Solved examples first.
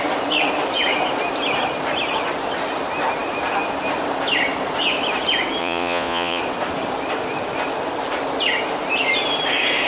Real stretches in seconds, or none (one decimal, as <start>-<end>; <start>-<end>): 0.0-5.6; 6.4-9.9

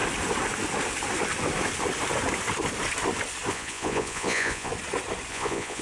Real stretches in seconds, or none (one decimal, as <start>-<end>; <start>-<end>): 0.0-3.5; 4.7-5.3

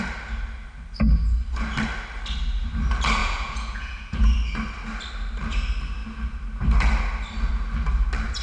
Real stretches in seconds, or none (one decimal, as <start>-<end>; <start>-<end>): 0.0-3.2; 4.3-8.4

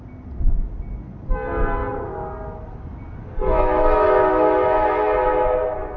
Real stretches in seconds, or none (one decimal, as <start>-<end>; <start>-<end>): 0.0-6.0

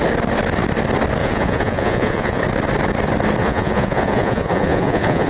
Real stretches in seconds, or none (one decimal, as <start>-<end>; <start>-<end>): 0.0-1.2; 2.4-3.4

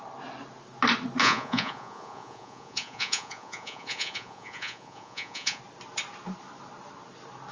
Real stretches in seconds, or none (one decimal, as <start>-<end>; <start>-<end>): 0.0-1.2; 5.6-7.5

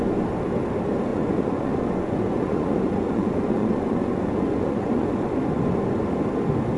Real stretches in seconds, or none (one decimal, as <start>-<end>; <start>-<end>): 0.0-1.1; 5.2-6.8

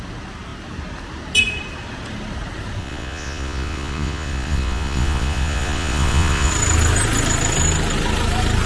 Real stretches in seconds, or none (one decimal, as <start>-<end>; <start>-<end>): 0.0-2.8; 6.5-8.7